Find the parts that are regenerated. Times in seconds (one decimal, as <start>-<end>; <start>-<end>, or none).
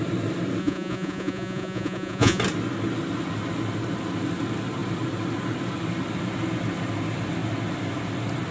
0.6-2.4